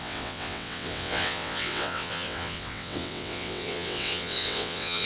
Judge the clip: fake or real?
fake